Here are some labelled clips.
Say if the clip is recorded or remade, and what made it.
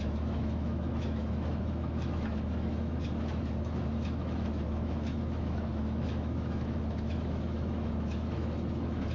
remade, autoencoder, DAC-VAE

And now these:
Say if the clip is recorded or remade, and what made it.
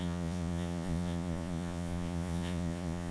remade, vocoder, Vocos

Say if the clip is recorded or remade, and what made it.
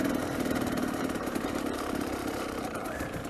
remade, vocoder, BigVGAN v2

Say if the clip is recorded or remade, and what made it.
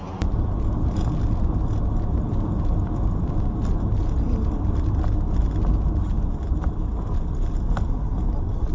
recorded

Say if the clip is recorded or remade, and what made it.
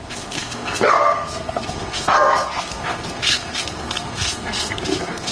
remade, codec, SNAC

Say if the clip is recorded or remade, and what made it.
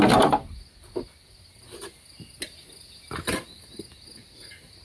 recorded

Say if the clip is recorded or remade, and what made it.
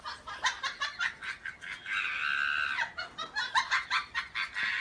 recorded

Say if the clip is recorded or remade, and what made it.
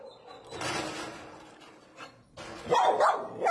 recorded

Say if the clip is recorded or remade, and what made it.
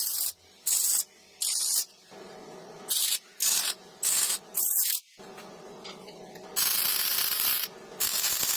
recorded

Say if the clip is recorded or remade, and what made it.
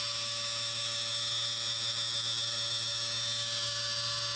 remade, autoencoder, DAC-VAE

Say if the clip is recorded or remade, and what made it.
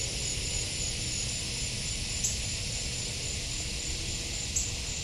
recorded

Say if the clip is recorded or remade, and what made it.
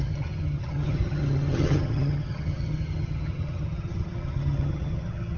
remade, vocoder, HiFi-GAN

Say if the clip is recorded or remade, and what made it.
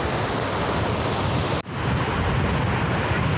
recorded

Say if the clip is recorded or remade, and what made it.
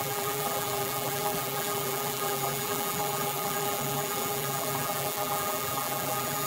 remade, vocoder, BigVGAN v2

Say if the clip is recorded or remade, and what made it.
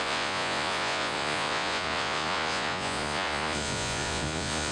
remade, vocoder, Vocos